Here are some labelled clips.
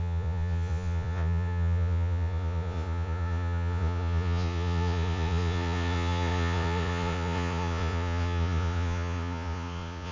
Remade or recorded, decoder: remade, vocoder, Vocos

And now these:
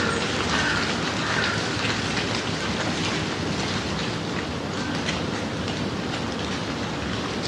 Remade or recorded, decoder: recorded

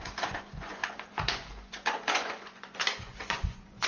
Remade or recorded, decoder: remade, vocoder, Vocos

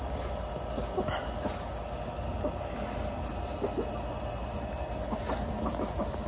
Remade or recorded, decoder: recorded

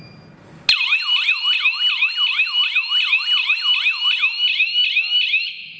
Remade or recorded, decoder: recorded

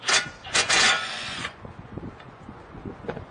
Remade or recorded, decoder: remade, vocoder, Vocos